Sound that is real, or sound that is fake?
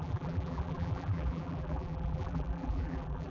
fake